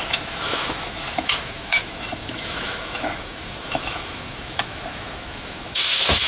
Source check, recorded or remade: remade